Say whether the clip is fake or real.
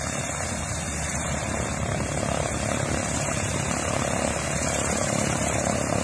real